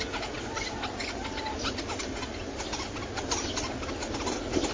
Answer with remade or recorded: recorded